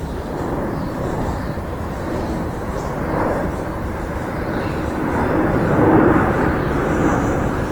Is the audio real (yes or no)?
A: no